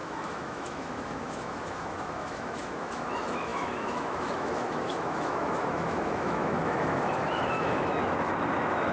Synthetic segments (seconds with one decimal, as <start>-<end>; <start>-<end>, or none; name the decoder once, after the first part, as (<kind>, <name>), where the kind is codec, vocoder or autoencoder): 0.0-8.9 (autoencoder, DAC-VAE)

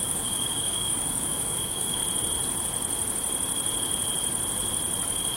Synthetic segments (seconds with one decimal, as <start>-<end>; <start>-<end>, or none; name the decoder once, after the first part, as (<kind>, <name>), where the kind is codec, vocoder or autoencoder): 0.0-2.0 (codec, DAC)